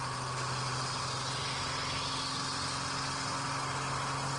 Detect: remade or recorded recorded